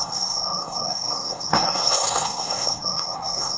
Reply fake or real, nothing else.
fake